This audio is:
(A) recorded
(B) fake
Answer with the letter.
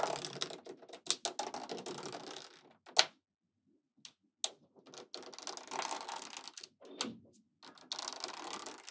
A